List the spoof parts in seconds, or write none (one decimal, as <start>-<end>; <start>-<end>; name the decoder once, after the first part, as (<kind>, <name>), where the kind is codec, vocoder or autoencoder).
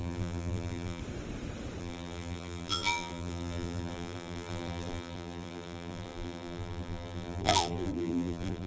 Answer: 0.0-1.0 (vocoder, BigVGAN v2); 1.8-8.7